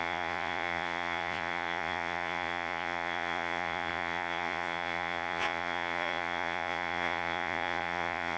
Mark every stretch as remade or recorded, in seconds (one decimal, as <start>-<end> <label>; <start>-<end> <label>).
0.0-8.4 remade